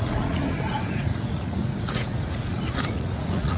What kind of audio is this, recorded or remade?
remade